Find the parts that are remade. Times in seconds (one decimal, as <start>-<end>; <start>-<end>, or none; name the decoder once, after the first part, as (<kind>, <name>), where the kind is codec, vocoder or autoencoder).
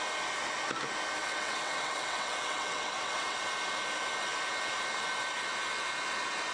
1.2-3.4 (vocoder, WaveNeXt)